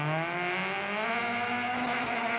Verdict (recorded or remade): recorded